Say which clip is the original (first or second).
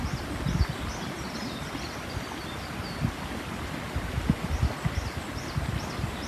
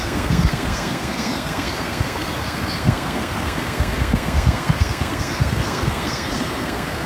first